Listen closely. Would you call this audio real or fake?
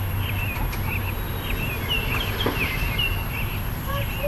real